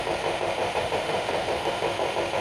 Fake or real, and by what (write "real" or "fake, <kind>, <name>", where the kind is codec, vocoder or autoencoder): fake, autoencoder, DAC-VAE